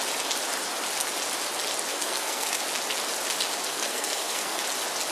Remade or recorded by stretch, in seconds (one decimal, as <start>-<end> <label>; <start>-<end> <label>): 0.0-1.9 recorded; 1.9-2.6 remade; 2.6-3.7 recorded; 3.7-4.6 remade; 4.6-5.1 recorded